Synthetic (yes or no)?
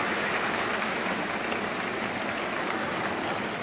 no